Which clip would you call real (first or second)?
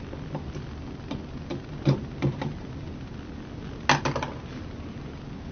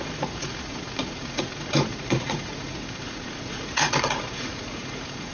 first